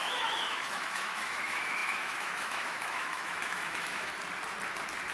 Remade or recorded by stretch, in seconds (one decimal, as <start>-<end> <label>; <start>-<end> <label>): 0.0-4.1 remade; 4.1-5.1 recorded